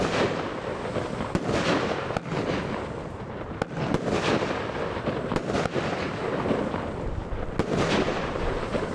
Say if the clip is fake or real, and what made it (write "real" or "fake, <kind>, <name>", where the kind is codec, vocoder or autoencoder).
real